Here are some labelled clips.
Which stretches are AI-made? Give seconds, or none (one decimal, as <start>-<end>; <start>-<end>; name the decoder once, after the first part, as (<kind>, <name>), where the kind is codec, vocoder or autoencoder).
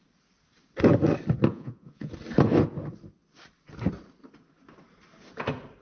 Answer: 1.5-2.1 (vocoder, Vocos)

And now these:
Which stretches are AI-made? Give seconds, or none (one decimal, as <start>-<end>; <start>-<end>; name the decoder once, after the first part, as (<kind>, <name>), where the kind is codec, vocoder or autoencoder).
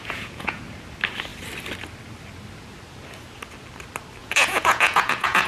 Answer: 0.0-0.6 (vocoder, Vocos); 4.2-5.5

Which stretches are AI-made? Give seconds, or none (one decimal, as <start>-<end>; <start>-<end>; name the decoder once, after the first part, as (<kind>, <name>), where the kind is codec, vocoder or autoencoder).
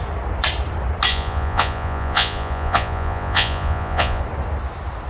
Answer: 1.1-4.2 (vocoder, Vocos)